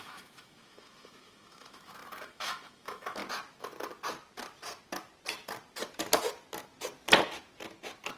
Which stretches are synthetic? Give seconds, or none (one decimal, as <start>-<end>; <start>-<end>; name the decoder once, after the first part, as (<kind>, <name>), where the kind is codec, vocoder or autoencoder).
0.0-3.2 (autoencoder, DAC-VAE)